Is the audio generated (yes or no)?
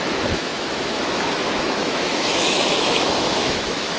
yes